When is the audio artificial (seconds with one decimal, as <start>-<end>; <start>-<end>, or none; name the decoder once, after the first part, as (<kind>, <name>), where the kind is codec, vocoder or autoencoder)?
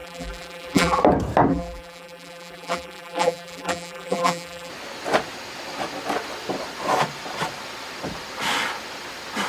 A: 0.0-1.0 (vocoder, BigVGAN v2); 1.5-4.7